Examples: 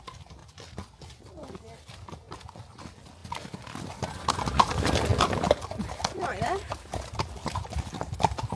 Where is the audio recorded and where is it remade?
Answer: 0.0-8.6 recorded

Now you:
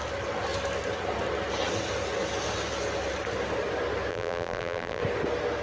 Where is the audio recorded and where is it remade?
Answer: 0.0-4.1 recorded; 4.1-5.0 remade; 5.0-5.6 recorded

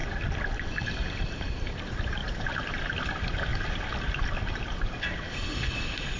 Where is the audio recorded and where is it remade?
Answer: 0.0-2.2 recorded; 2.2-3.1 remade; 3.1-6.2 recorded

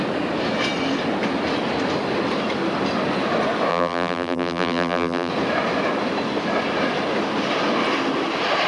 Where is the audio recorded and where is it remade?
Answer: 0.0-3.7 recorded; 3.7-5.3 remade; 5.3-8.7 recorded

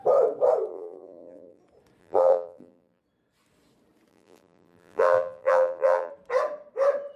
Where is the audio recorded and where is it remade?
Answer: 0.0-0.7 recorded; 0.7-1.6 remade; 1.6-2.0 recorded; 2.0-3.0 remade; 3.0-4.1 recorded; 4.1-6.1 remade; 6.1-7.2 recorded

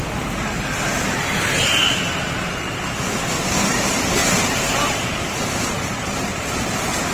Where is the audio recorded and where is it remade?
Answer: 0.0-1.8 remade; 1.8-2.5 recorded; 2.5-4.2 remade; 4.2-4.9 recorded; 4.9-7.1 remade

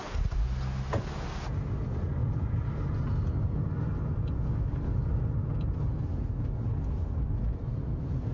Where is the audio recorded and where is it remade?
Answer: 0.0-2.2 recorded; 2.2-2.9 remade; 2.9-7.4 recorded; 7.4-8.3 remade